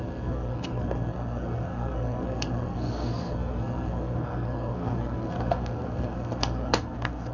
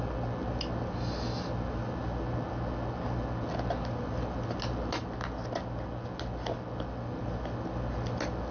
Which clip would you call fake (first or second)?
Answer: first